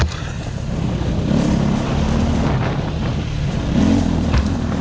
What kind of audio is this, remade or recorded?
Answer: recorded